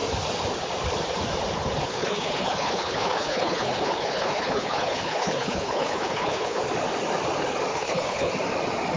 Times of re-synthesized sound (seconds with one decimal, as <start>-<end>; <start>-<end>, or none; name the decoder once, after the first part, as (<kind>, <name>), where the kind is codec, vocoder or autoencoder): 1.8-6.6 (codec, HILCodec); 7.7-8.3